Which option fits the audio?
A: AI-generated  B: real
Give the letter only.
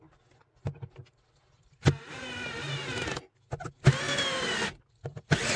B